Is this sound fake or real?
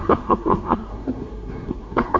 fake